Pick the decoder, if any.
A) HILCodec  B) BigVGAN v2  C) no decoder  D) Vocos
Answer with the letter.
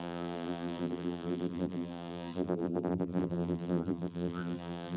B